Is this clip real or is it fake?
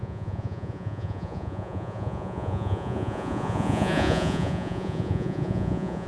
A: fake